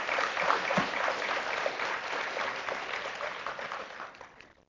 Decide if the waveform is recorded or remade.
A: recorded